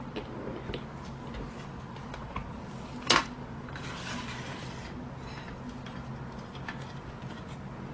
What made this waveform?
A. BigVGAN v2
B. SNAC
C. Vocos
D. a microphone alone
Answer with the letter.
D